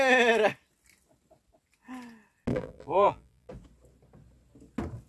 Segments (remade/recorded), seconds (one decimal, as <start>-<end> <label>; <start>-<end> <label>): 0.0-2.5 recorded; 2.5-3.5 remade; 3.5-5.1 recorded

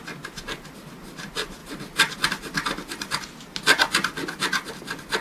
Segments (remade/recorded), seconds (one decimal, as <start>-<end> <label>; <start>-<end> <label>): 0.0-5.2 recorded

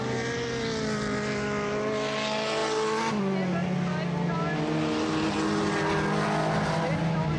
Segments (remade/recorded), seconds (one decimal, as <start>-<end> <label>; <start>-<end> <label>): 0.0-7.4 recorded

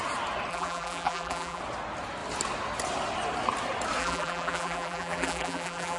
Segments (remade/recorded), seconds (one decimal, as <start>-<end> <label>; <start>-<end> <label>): 0.0-0.5 recorded; 0.5-1.6 remade; 1.6-4.0 recorded; 4.0-6.0 remade

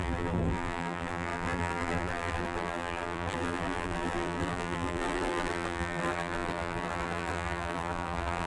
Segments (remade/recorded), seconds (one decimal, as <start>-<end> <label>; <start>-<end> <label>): 0.0-8.5 remade

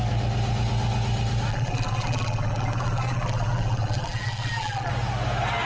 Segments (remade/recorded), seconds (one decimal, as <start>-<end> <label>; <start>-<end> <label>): 0.0-1.5 recorded; 1.5-4.9 remade; 4.9-5.6 recorded